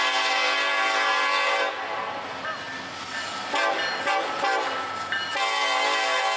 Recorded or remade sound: recorded